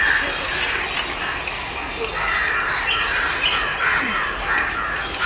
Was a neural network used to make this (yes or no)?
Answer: no